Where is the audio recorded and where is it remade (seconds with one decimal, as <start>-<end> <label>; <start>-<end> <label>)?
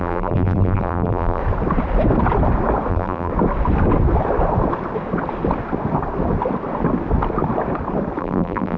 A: 0.0-1.4 remade; 1.4-2.9 recorded; 2.9-3.3 remade; 3.3-8.2 recorded; 8.2-8.8 remade